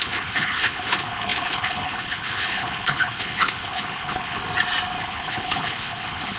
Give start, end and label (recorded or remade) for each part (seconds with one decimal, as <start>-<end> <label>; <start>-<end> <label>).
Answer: 0.0-4.4 remade; 4.4-5.0 recorded; 5.0-6.4 remade